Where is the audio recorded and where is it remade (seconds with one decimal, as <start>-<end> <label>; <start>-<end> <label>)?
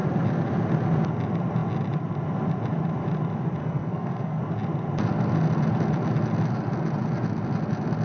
0.0-3.6 recorded; 3.6-4.4 remade; 4.4-8.0 recorded